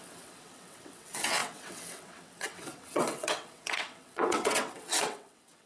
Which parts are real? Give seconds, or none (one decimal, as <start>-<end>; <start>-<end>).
none